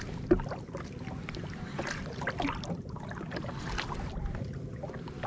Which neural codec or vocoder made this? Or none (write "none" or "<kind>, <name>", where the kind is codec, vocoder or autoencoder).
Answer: none